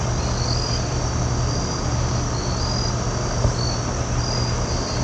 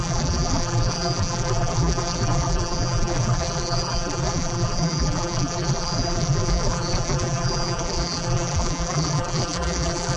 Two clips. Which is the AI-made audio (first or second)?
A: second